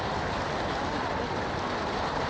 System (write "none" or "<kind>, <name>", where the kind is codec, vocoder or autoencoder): none